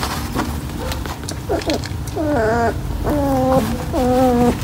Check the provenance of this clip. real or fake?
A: real